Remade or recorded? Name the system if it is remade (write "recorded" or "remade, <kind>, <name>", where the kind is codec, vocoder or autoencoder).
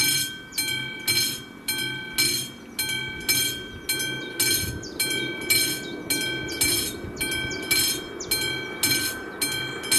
recorded